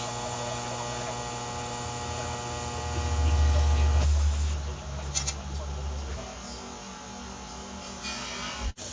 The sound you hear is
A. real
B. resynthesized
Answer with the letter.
A